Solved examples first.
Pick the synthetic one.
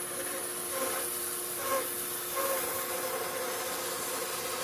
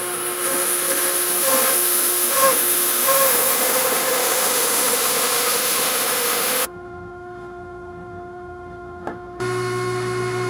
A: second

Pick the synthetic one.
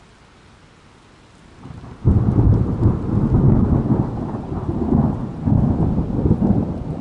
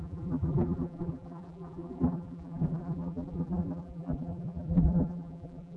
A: second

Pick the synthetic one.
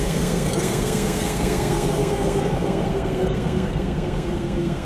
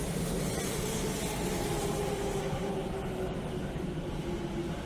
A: first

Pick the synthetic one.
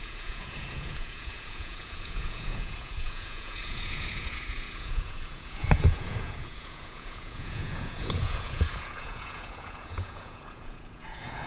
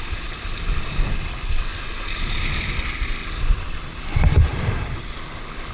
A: first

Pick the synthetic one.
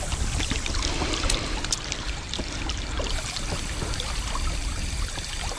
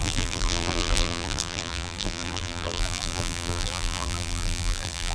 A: second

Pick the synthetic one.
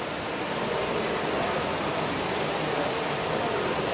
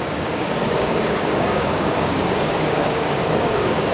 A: second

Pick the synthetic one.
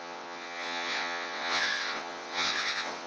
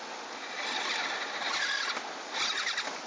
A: first